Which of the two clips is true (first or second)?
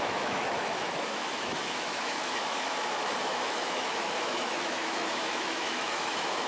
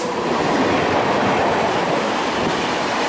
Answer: second